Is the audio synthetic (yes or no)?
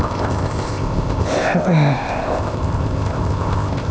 yes